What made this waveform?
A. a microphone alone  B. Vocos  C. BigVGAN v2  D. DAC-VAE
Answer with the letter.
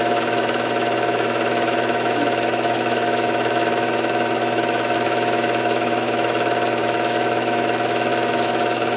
D